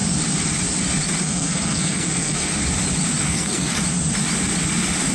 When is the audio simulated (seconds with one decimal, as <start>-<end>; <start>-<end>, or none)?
1.2-2.6; 3.2-3.7